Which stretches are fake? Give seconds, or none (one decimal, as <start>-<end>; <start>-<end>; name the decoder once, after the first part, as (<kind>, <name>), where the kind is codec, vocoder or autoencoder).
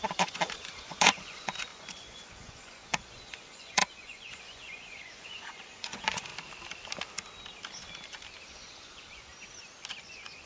0.0-6.3 (vocoder, Vocos); 8.5-9.3; 10.0-10.5